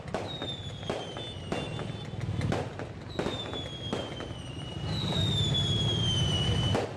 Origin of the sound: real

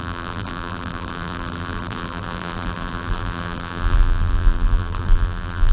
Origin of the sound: fake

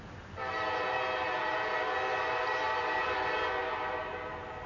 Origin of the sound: real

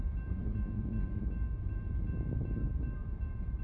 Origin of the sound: fake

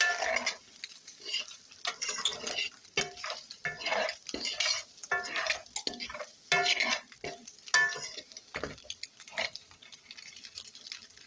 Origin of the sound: real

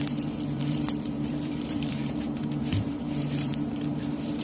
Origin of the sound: fake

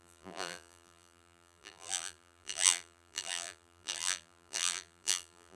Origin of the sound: fake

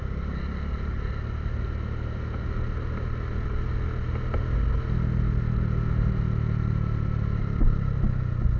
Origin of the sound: real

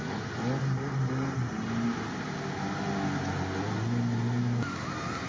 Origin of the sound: real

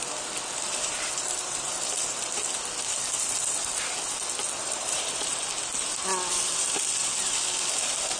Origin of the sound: real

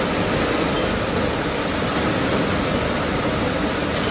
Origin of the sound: real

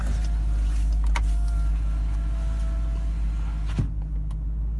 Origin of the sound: real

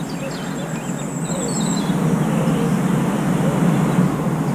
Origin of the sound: real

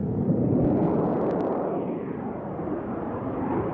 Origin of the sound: fake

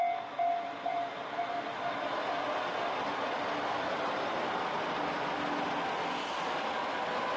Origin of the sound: real